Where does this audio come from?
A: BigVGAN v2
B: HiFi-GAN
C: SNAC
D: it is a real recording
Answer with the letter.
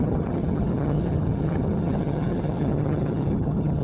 B